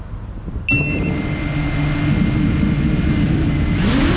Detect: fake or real real